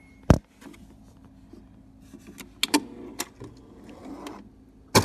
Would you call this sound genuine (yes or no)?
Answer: yes